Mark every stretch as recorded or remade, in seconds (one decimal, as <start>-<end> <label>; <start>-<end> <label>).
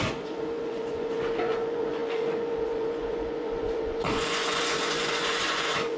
0.0-6.0 remade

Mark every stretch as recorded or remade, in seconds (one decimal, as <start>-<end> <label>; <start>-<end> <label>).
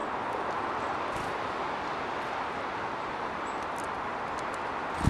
0.0-2.9 recorded; 2.9-3.4 remade; 3.4-5.1 recorded